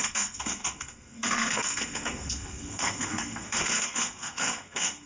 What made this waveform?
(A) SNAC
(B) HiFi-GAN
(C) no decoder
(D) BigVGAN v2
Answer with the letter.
A